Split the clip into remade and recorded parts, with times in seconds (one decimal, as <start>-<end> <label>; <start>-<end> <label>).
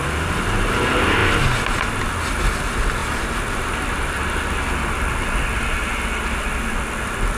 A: 0.0-7.4 recorded